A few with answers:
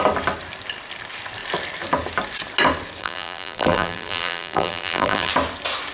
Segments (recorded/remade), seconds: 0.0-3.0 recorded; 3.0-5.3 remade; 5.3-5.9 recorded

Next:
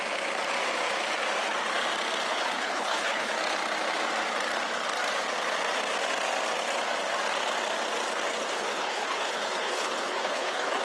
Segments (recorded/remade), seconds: 0.0-2.3 recorded; 2.3-3.3 remade; 3.3-8.4 recorded; 8.4-10.8 remade

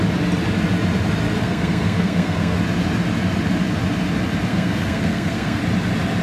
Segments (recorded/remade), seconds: 0.0-1.4 recorded; 1.4-2.6 remade; 2.6-4.5 recorded; 4.5-5.6 remade; 5.6-6.2 recorded